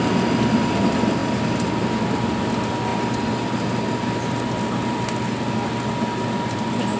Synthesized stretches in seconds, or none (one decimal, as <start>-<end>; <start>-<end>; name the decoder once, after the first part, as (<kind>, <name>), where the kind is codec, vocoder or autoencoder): none